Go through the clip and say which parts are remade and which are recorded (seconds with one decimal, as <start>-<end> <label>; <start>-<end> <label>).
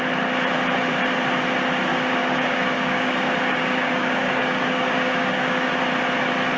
0.0-1.9 recorded; 1.9-5.7 remade; 5.7-6.6 recorded